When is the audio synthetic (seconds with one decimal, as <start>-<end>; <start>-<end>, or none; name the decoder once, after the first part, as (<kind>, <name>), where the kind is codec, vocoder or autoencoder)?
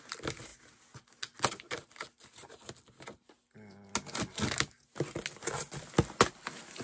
none